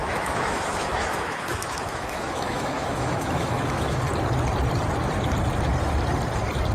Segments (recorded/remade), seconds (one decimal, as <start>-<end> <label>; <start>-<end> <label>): 0.0-4.0 remade; 4.0-6.7 recorded

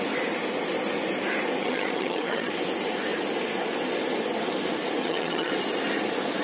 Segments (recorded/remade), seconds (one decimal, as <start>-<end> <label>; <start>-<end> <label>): 0.0-1.6 recorded; 1.6-2.5 remade; 2.5-5.0 recorded; 5.0-5.5 remade; 5.5-6.4 recorded

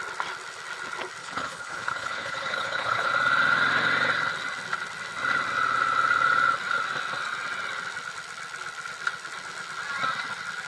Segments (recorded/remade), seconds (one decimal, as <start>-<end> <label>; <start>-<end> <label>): 0.0-1.2 recorded; 1.2-3.1 remade; 3.1-10.7 recorded

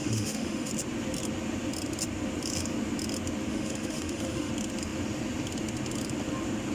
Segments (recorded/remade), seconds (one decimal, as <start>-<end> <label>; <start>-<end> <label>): 0.0-0.7 remade; 0.7-3.5 recorded; 3.5-4.5 remade; 4.5-6.7 recorded

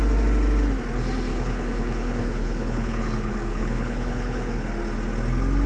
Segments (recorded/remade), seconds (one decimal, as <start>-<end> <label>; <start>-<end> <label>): 0.0-1.3 recorded; 1.3-4.7 remade; 4.7-5.7 recorded